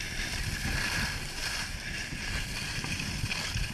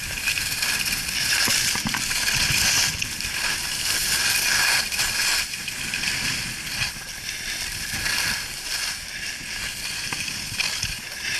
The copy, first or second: first